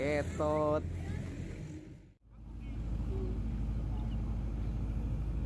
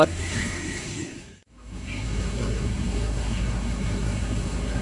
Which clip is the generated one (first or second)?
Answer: second